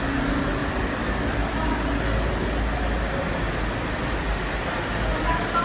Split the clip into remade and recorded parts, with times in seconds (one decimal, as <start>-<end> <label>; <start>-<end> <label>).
0.0-5.6 recorded